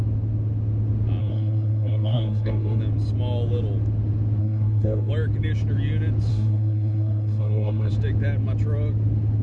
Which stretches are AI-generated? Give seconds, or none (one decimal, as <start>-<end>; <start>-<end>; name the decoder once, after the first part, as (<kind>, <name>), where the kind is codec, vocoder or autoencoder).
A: 1.2-2.8 (codec, SNAC); 4.4-5.1; 6.3-7.9